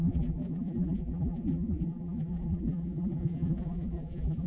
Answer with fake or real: fake